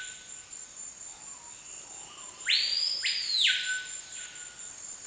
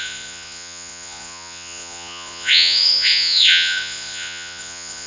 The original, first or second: first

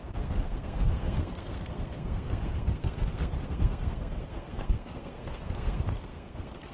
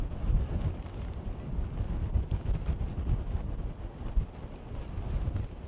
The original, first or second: second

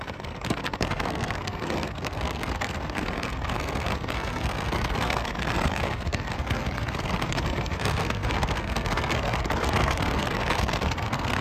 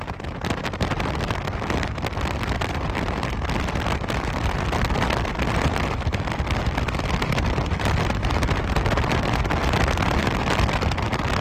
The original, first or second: second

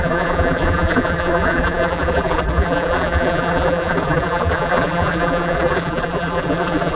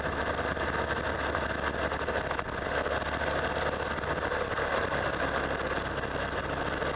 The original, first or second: second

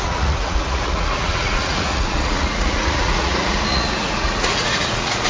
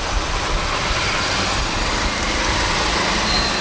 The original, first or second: second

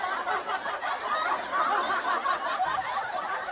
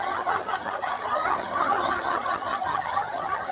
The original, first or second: first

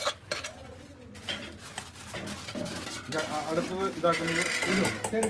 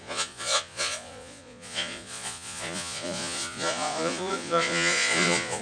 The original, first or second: first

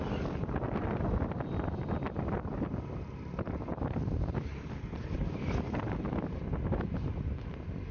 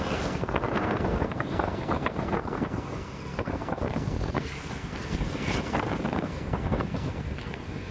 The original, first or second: first